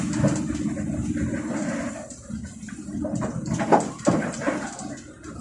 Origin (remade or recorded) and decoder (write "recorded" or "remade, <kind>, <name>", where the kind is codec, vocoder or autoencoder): recorded